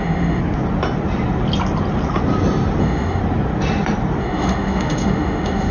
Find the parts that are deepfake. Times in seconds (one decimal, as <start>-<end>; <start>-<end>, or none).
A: 0.0-0.4; 2.8-3.2; 4.2-5.7